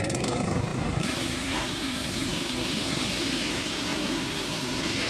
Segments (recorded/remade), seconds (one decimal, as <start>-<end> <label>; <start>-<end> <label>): 0.0-5.1 remade